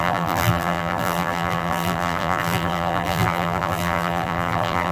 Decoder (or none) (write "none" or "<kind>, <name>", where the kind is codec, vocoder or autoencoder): vocoder, BigVGAN v2